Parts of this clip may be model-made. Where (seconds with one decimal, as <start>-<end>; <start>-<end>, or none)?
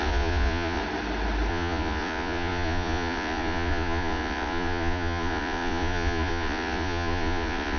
0.0-0.8; 1.5-7.8